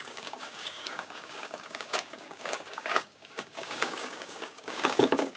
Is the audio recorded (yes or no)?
no